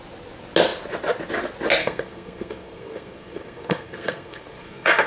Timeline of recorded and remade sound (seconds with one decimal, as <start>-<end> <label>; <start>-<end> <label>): 0.0-1.8 recorded; 1.8-5.1 remade